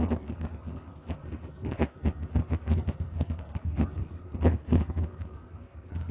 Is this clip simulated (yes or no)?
yes